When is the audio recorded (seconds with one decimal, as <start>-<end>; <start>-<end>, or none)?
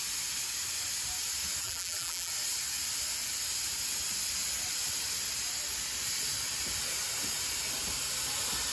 0.0-1.6; 2.3-8.7